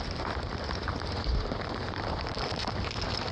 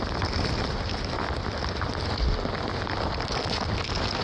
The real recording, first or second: second